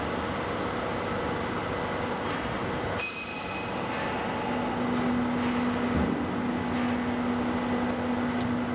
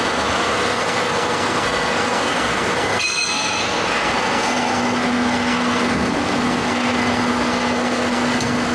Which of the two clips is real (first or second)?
first